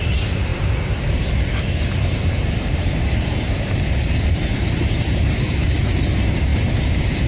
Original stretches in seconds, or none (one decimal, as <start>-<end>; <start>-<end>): none